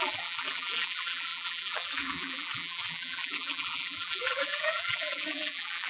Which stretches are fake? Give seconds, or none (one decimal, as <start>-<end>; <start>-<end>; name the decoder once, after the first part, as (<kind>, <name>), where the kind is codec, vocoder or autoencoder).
0.0-5.9 (vocoder, BigVGAN v2)